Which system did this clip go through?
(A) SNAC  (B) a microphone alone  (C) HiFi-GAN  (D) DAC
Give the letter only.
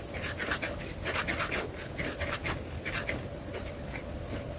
B